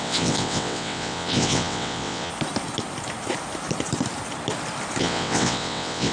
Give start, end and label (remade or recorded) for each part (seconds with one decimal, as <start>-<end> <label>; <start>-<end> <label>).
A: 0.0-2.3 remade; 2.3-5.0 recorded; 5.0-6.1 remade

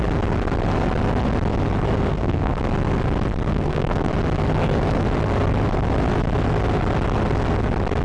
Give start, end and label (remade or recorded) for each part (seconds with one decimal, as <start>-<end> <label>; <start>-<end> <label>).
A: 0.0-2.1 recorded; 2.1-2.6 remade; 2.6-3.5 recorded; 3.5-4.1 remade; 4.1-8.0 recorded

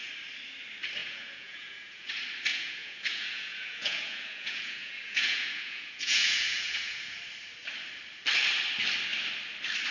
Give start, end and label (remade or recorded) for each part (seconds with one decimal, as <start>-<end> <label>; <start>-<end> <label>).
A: 0.0-1.0 recorded; 1.0-2.1 remade; 2.1-2.5 recorded; 2.5-7.2 remade; 7.2-9.9 recorded